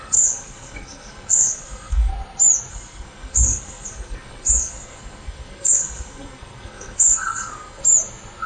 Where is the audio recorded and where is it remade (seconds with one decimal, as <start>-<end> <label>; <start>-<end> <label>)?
0.0-2.1 remade; 2.1-2.7 recorded; 2.7-7.8 remade; 7.8-8.5 recorded

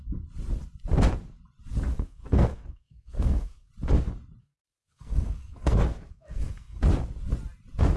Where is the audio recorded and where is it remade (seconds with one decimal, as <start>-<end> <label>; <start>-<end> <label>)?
0.0-1.9 recorded; 1.9-3.7 remade; 3.7-4.4 recorded; 4.4-6.8 remade; 6.8-8.0 recorded